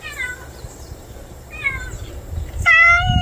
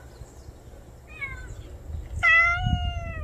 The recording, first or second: second